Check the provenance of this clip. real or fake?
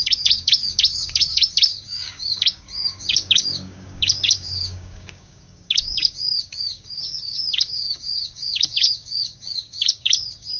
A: fake